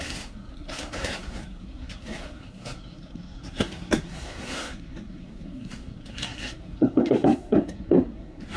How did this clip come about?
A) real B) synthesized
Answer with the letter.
B